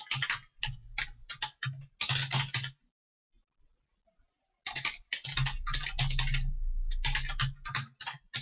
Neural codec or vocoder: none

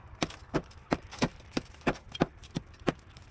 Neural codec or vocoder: none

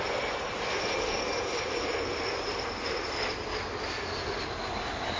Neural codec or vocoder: none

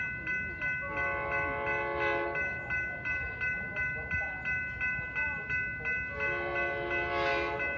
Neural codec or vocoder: none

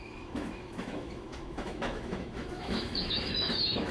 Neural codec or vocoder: autoencoder, DAC-VAE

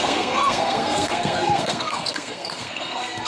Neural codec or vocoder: codec, SNAC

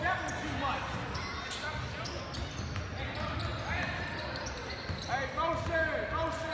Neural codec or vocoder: none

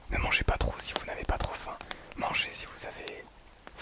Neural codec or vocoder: none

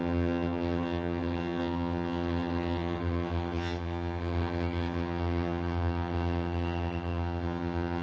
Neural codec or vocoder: vocoder, HiFi-GAN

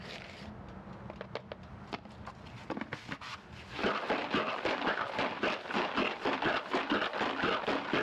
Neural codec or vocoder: none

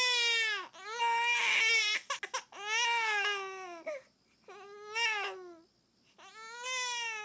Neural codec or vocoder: none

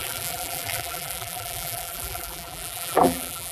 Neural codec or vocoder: vocoder, BigVGAN v2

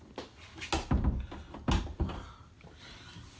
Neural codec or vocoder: none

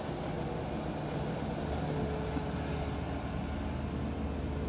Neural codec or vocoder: none